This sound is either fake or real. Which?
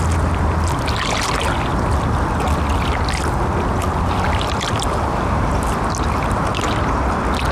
real